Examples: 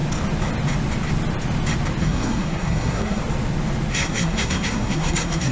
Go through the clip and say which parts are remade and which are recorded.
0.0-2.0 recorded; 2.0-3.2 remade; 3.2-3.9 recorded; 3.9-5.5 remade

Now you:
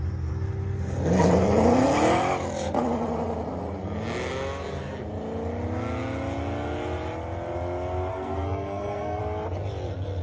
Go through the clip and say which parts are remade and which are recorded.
0.0-8.1 recorded; 8.1-9.2 remade; 9.2-10.2 recorded

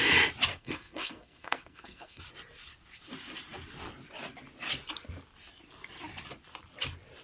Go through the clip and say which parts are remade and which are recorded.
0.0-0.5 recorded; 0.5-2.2 remade; 2.2-7.2 recorded

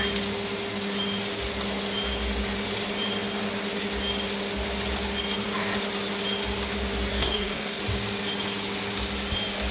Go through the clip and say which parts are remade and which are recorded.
0.0-7.2 recorded; 7.2-7.8 remade; 7.8-9.7 recorded

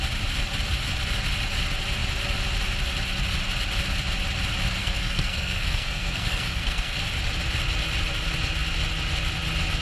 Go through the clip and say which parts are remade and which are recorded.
0.0-4.8 recorded; 4.8-7.0 remade; 7.0-9.8 recorded

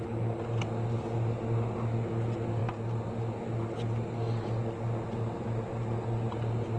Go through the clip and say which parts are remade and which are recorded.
0.0-6.8 recorded

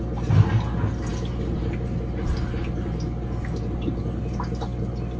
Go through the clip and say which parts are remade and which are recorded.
0.0-5.2 recorded

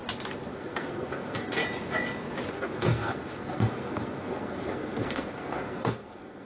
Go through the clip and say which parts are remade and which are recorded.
0.0-0.5 recorded; 0.5-1.6 remade; 1.6-2.5 recorded; 2.5-6.4 remade